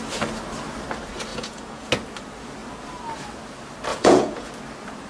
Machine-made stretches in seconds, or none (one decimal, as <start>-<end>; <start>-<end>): 1.3-1.9; 3.9-4.5